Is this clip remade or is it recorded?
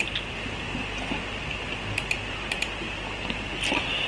recorded